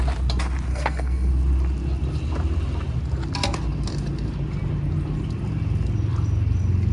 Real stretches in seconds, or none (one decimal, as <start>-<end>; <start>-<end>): 0.0-0.7; 1.3-6.9